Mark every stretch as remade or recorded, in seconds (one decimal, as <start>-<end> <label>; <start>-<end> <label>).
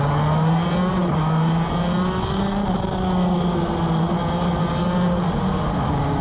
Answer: 0.0-6.2 recorded